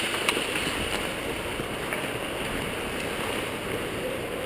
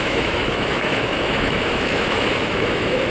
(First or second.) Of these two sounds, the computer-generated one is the second